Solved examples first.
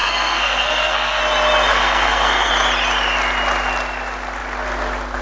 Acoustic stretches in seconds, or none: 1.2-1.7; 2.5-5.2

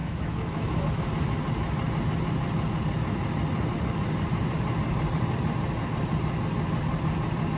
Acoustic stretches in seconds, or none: 1.1-7.6